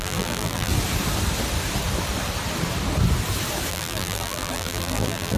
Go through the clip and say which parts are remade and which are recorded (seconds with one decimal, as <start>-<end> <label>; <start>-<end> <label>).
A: 0.0-0.7 remade; 0.7-3.7 recorded; 3.7-5.4 remade